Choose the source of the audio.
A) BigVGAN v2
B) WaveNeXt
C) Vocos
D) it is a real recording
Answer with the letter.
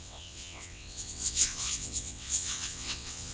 B